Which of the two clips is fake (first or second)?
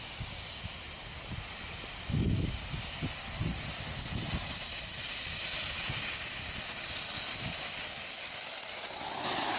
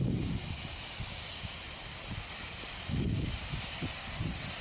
second